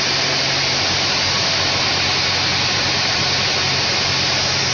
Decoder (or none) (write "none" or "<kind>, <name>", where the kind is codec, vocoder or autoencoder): none